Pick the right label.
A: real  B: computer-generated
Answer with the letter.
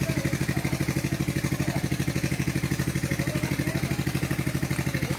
A